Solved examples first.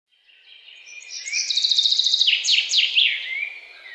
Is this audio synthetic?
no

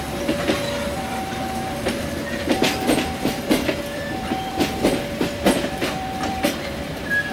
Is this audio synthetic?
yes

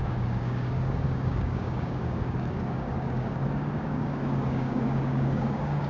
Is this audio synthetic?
yes